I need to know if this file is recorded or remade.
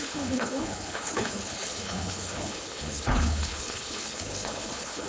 remade